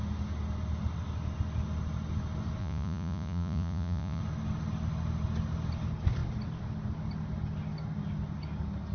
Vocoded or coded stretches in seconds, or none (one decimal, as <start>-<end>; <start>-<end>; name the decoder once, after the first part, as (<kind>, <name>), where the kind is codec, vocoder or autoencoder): 2.6-4.2 (vocoder, Vocos)